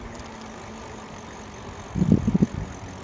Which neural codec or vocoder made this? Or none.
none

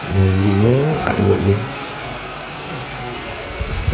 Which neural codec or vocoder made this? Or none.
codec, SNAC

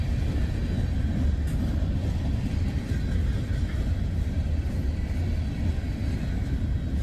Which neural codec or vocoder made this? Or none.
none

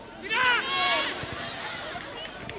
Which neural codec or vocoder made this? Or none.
none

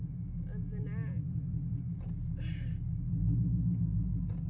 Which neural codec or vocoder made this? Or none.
none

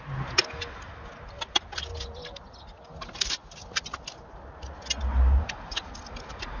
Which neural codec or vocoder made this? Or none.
none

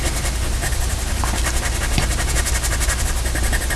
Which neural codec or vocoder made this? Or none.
none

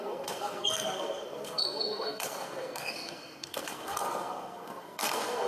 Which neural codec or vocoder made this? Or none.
codec, SNAC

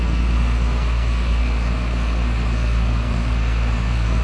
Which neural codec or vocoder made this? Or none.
codec, SNAC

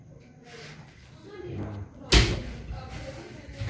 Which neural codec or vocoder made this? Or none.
none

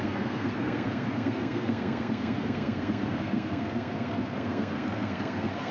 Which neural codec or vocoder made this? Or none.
codec, SNAC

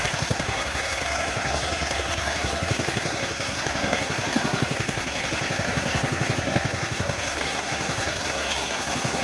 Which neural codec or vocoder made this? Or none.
codec, SNAC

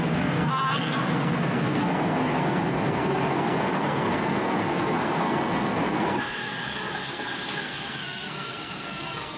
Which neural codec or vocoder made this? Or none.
codec, SNAC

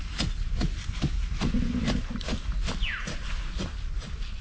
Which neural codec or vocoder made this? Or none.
none